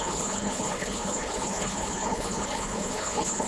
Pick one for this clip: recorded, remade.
remade